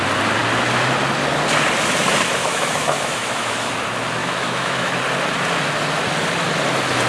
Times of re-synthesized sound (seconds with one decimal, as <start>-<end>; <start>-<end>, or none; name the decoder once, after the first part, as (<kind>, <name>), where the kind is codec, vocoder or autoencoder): 2.4-3.7 (autoencoder, DAC-VAE); 4.2-5.0